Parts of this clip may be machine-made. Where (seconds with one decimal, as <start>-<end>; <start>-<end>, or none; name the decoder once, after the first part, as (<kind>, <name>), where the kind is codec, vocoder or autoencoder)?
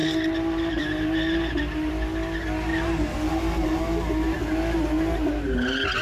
0.0-1.9 (vocoder, BigVGAN v2); 2.7-3.8